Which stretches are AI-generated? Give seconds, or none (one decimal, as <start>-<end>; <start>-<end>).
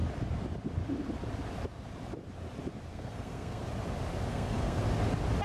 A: 2.9-3.6; 4.3-4.8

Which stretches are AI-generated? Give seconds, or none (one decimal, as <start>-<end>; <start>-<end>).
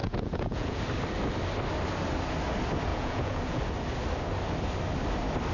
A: 0.0-0.8; 2.9-3.6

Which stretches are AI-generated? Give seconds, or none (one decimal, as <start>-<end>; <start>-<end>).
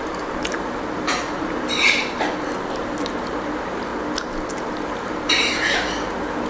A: 0.0-2.0; 2.8-3.9; 4.6-6.5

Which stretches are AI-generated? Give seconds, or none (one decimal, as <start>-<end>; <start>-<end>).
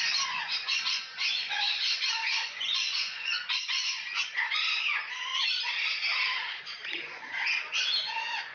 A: 0.0-5.3; 6.6-8.5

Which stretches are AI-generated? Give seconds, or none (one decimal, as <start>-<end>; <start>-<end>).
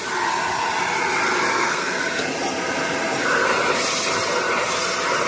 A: 1.5-2.0